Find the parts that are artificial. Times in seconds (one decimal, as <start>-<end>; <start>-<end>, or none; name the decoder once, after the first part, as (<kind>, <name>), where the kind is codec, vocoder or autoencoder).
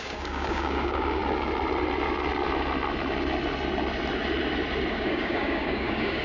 0.0-1.2 (codec, DAC); 4.9-6.2